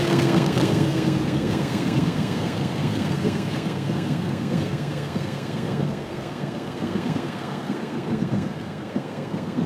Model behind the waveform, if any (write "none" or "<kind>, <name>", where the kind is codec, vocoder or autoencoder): codec, SNAC